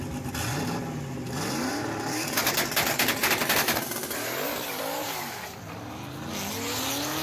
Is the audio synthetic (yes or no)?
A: no